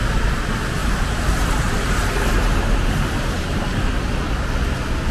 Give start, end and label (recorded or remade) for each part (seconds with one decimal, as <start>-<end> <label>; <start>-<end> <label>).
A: 0.0-0.8 recorded; 0.8-3.9 remade; 3.9-5.1 recorded